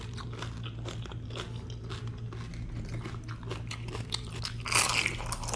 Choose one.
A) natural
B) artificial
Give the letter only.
A